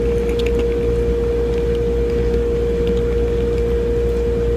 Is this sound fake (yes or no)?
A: no